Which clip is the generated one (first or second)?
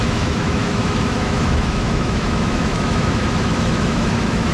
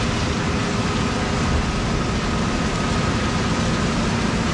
first